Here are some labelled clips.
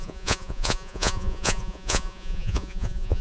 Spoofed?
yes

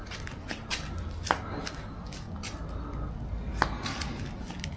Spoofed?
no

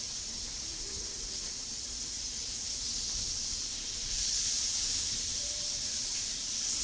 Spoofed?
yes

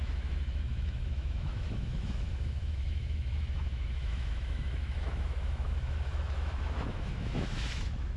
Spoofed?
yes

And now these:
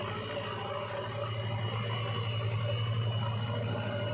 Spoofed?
no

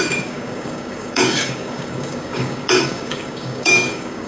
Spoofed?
yes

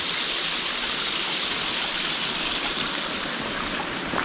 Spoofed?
no